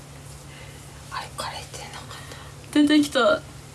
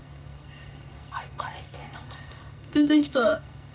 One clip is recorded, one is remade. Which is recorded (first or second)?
first